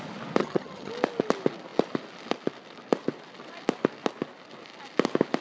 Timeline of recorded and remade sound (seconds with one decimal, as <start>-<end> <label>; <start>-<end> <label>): 0.0-0.4 recorded; 0.4-0.9 remade; 0.9-5.4 recorded